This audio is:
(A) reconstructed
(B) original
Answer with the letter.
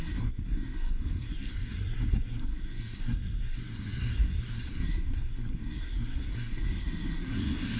A